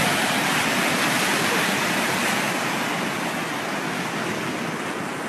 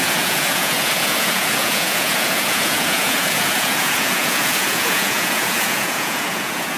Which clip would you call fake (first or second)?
second